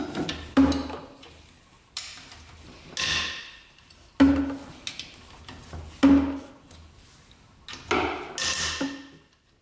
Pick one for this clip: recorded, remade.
recorded